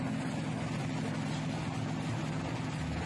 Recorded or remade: recorded